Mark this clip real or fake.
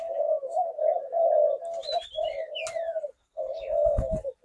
real